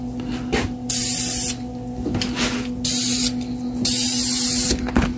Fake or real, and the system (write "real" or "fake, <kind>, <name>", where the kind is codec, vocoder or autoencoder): real